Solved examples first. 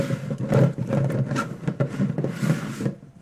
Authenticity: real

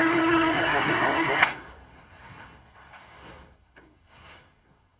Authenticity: fake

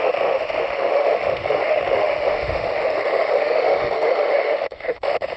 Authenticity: fake